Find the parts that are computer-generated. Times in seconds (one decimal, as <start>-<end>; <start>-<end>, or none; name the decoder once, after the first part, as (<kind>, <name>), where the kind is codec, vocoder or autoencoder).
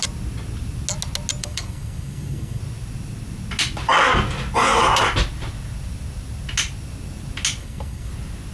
1.4-2.6 (codec, SNAC); 7.6-8.1